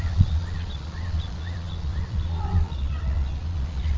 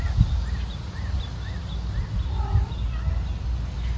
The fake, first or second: first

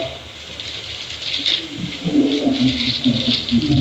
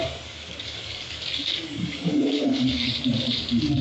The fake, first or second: second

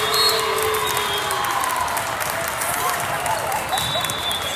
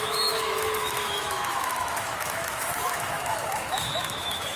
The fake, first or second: second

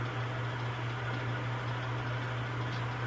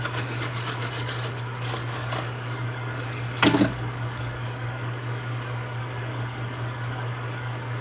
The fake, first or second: second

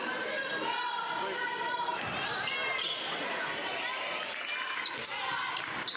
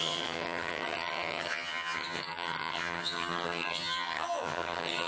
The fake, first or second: second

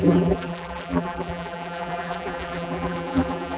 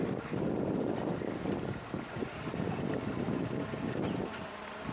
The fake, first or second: first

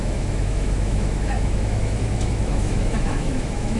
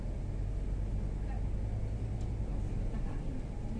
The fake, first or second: first